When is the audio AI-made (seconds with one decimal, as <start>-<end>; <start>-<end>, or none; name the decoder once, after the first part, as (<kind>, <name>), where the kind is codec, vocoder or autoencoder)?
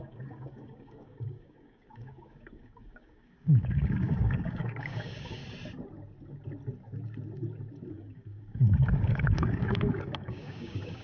0.0-5.4 (codec, DAC); 7.9-11.0